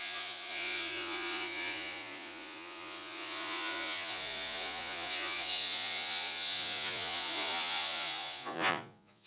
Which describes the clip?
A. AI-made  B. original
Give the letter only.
A